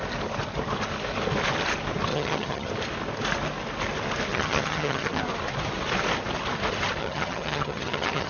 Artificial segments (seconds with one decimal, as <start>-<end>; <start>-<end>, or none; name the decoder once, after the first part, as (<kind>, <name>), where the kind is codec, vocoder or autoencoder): 2.1-2.7 (vocoder, HiFi-GAN); 4.3-5.2; 7.0-8.3